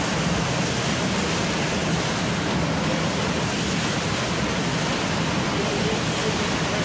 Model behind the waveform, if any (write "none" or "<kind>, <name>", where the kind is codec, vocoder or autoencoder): none